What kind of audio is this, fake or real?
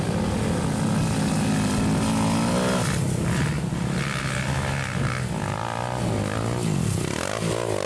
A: real